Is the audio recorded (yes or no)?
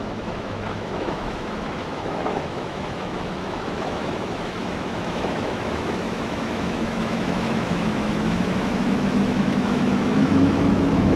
no